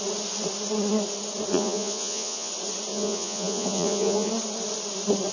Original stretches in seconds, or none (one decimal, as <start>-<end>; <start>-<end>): 0.0-1.5; 2.5-2.9; 4.3-5.3